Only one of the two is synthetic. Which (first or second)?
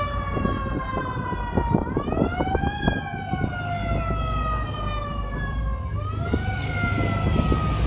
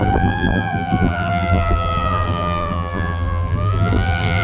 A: second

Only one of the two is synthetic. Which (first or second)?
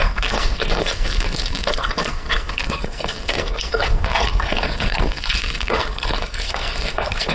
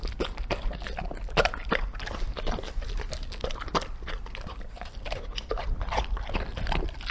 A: first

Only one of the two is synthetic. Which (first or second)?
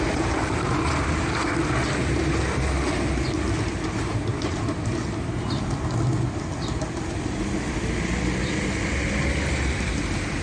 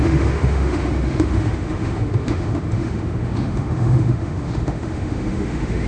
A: second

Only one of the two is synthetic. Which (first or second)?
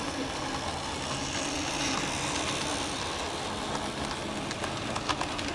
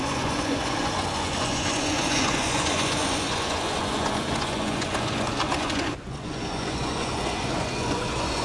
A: second